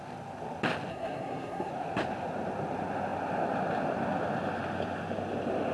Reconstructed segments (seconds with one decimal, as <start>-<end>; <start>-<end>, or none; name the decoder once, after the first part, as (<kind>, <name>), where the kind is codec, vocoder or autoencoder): 0.9-1.7 (codec, SNAC)